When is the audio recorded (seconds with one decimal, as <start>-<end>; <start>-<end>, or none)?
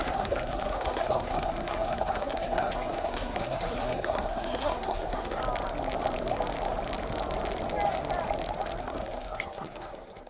5.4-8.8